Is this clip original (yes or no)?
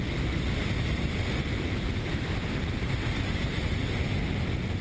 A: yes